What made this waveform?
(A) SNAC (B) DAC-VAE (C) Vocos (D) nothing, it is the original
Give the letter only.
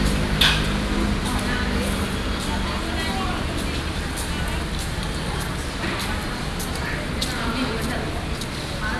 D